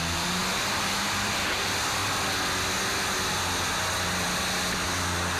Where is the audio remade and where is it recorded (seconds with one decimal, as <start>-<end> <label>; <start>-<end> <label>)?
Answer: 0.0-2.0 remade; 2.0-5.4 recorded